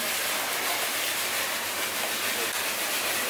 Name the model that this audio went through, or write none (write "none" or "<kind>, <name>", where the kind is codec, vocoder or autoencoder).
none